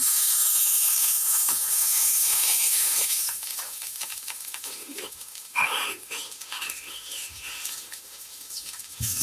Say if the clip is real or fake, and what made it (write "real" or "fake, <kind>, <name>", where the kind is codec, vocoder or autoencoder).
fake, autoencoder, DAC-VAE